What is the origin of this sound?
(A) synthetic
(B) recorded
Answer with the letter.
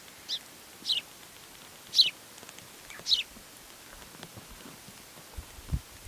B